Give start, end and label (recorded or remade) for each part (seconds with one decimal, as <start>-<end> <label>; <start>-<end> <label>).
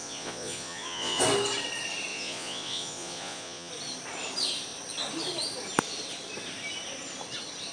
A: 0.0-1.2 remade; 1.2-2.1 recorded; 2.1-3.7 remade; 3.7-7.7 recorded